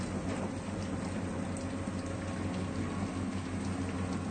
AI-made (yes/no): no